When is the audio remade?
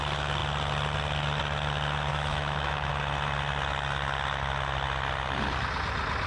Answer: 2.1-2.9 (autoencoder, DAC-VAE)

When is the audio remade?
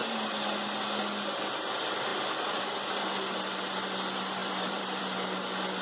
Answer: 4.4-5.0 (vocoder, BigVGAN v2)